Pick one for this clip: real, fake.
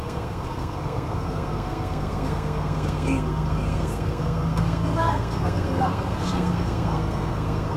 fake